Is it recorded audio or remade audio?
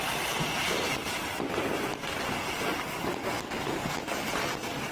recorded